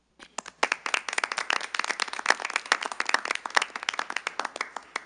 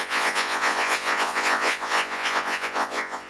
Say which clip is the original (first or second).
first